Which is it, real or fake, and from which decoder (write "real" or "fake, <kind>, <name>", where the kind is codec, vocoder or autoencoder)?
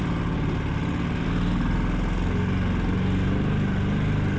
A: real